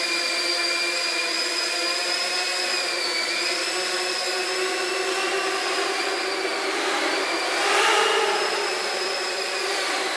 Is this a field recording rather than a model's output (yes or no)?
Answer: yes